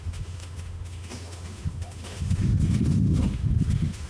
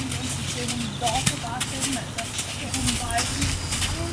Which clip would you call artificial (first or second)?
first